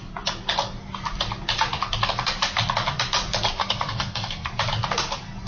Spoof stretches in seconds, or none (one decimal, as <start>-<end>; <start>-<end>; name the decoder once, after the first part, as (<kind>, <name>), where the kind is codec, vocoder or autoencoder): 3.6-4.5 (codec, SNAC)

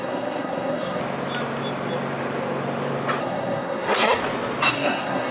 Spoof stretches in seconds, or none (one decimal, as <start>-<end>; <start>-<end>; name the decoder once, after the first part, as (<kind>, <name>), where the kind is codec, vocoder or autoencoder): 0.0-1.0 (codec, SNAC); 3.2-4.2; 4.7-5.3

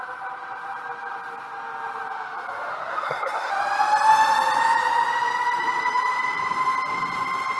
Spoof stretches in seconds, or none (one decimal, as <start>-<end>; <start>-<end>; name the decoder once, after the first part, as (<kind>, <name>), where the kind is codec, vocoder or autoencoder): 2.9-3.5 (codec, SNAC)

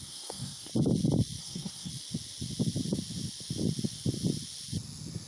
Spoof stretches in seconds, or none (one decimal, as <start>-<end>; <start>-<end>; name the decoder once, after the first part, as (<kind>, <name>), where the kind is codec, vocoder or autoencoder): 0.0-0.7 (codec, SNAC); 1.4-1.9